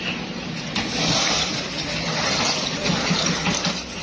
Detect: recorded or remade recorded